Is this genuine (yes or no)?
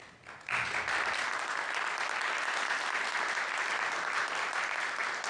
yes